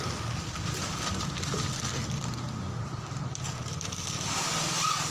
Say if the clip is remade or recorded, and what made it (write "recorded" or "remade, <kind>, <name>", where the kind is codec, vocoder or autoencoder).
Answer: recorded